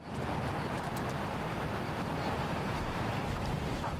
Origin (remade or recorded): remade